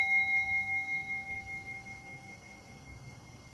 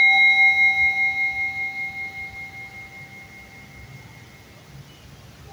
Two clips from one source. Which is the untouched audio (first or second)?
second